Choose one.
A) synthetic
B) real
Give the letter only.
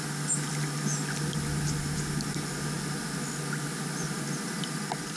B